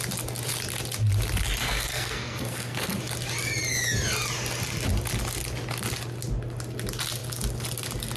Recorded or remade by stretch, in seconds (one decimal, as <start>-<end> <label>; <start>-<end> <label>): 0.0-1.6 recorded; 1.6-3.0 remade; 3.0-8.2 recorded